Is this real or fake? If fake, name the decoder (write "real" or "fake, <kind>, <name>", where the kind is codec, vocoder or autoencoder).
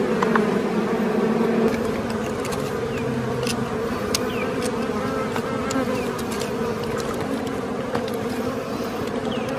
real